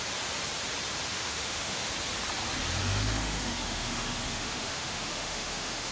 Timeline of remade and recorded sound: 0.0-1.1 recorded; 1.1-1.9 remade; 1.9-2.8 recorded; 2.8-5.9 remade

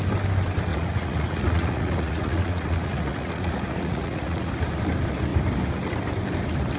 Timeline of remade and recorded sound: 0.0-0.7 recorded; 0.7-4.5 remade; 4.5-6.8 recorded

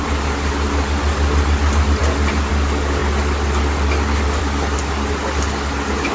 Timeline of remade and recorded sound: 0.0-6.1 recorded

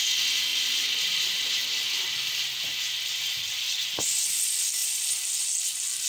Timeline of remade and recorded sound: 0.0-0.5 recorded; 0.5-1.5 remade; 1.5-6.1 recorded

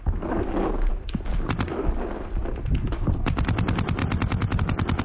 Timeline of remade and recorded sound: 0.0-4.0 recorded; 4.0-4.6 remade; 4.6-5.0 recorded

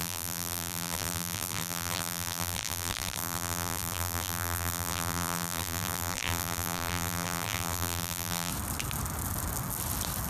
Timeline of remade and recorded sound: 0.0-8.5 remade; 8.5-10.3 recorded

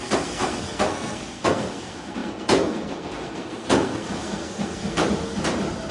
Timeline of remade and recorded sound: 0.0-5.0 remade; 5.0-5.9 recorded